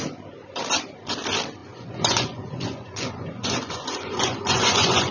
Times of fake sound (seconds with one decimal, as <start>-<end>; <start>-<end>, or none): 1.6-5.1